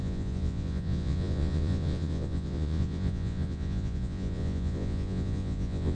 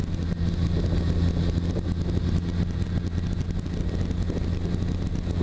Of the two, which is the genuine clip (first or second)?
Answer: second